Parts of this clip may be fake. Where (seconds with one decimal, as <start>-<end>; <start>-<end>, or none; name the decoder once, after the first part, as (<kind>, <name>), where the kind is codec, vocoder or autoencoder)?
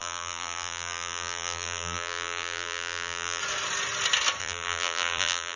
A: 0.0-3.4 (vocoder, BigVGAN v2); 4.4-5.6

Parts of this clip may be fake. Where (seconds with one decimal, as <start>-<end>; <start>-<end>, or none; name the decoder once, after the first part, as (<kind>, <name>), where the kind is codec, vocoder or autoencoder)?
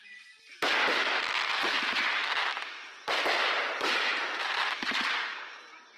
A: 3.4-5.6 (vocoder, BigVGAN v2)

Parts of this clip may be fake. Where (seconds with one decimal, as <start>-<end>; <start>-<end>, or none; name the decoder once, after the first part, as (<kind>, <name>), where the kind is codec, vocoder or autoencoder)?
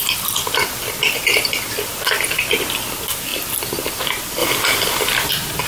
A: 0.0-5.7 (vocoder, BigVGAN v2)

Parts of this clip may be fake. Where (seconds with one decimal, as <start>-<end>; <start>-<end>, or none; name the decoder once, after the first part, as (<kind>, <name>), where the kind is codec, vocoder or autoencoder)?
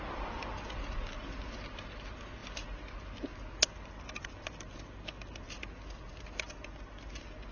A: none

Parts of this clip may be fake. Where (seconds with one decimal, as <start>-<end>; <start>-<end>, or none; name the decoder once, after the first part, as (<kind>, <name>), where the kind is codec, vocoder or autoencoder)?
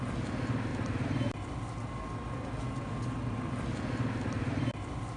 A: none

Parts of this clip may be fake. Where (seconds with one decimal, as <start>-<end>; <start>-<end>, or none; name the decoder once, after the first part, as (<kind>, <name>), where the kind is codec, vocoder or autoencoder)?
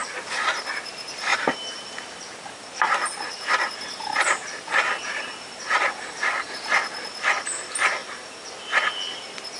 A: 0.0-0.5 (vocoder, BigVGAN v2); 1.3-6.5; 8.0-8.5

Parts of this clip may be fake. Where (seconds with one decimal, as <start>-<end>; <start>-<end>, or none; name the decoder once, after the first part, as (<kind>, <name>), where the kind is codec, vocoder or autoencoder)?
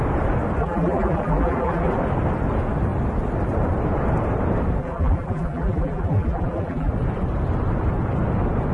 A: 0.6-1.9 (vocoder, BigVGAN v2); 4.8-6.9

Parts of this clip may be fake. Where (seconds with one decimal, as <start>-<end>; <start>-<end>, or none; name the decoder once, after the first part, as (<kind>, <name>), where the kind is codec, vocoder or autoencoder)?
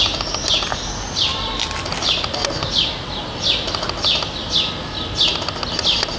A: none